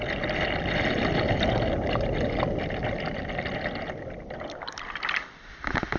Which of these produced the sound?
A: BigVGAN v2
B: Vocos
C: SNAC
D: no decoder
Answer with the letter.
D